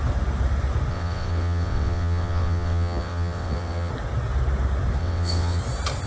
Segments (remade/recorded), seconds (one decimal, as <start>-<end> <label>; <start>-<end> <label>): 0.0-0.9 recorded; 0.9-3.9 remade; 3.9-5.0 recorded; 5.0-5.6 remade; 5.6-6.1 recorded